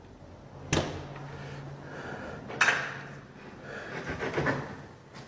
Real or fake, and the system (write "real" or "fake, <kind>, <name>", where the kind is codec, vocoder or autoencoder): real